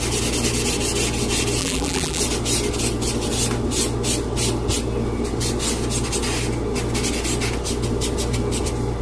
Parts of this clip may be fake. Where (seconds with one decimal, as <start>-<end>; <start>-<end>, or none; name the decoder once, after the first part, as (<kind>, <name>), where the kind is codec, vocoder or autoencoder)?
1.6-2.2 (vocoder, BigVGAN v2)